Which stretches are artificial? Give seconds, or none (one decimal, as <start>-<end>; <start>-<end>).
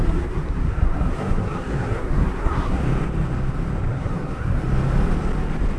0.0-2.8; 3.9-4.6